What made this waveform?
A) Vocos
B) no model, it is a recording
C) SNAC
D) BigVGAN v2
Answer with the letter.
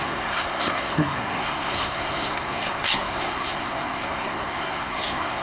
C